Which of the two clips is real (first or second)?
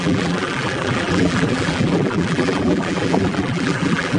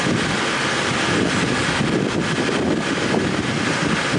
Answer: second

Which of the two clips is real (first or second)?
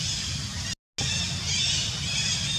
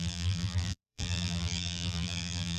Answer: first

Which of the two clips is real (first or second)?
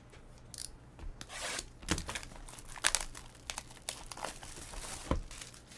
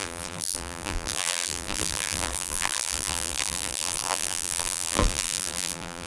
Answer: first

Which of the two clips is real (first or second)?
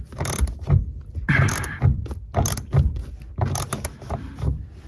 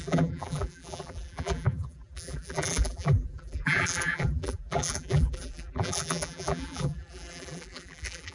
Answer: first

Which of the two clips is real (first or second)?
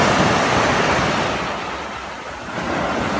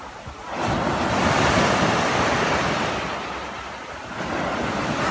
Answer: first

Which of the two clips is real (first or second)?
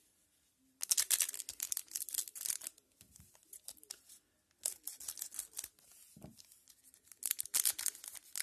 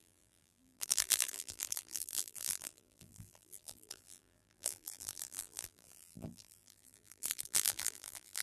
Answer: first